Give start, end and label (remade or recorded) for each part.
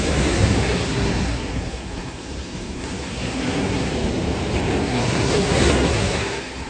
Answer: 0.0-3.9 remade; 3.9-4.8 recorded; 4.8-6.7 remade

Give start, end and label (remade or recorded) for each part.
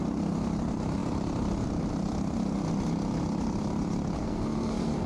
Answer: 0.0-4.2 recorded; 4.2-5.1 remade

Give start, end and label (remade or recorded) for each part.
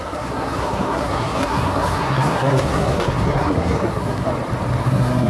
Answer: 0.0-4.3 remade; 4.3-4.8 recorded; 4.8-5.3 remade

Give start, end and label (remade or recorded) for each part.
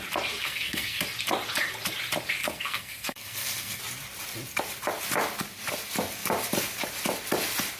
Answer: 0.0-0.4 recorded; 0.4-1.0 remade; 1.0-2.4 recorded; 2.4-3.8 remade; 3.8-7.8 recorded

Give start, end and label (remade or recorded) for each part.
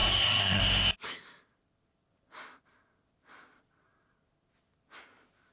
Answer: 0.0-0.6 remade; 0.6-5.5 recorded